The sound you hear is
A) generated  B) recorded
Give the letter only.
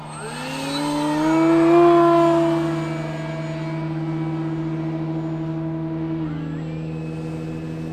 B